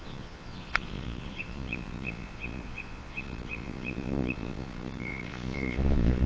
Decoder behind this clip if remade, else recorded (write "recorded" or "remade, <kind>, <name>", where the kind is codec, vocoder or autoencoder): remade, vocoder, Vocos